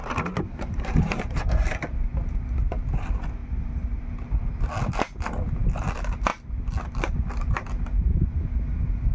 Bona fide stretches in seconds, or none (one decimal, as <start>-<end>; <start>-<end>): 1.4-3.4; 4.0-9.1

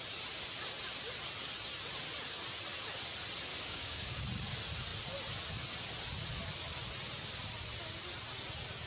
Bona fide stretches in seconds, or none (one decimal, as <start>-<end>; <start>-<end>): 0.0-3.5; 4.2-8.9

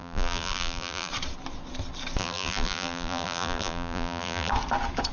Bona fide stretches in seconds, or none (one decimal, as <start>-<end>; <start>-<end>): 1.1-2.2; 4.5-5.1